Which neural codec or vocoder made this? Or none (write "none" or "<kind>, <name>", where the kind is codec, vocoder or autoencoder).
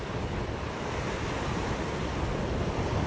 none